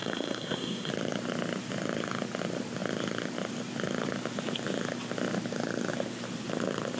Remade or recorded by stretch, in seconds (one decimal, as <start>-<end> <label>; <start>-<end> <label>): 0.0-0.9 remade; 0.9-7.0 recorded

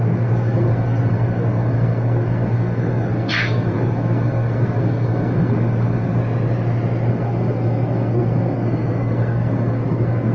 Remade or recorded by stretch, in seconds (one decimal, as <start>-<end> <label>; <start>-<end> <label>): 0.0-6.2 remade; 6.2-7.1 recorded; 7.1-10.3 remade

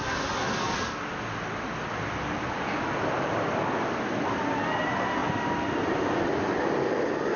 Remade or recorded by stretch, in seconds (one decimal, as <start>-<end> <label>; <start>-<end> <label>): 0.0-7.4 recorded

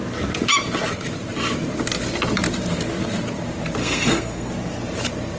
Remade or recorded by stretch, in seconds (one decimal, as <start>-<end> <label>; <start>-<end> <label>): 0.0-3.8 recorded; 3.8-4.5 remade; 4.5-5.4 recorded